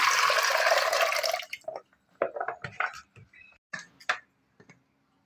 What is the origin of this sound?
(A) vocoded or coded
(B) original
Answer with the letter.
B